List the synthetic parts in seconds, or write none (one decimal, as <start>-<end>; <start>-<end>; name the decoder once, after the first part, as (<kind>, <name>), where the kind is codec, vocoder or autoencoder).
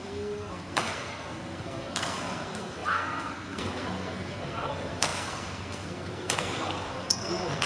0.0-7.7 (codec, SNAC)